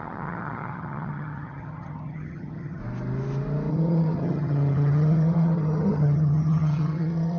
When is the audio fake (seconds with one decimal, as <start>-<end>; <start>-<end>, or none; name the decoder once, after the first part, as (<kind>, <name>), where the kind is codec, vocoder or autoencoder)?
0.0-2.8 (vocoder, HiFi-GAN); 3.7-7.4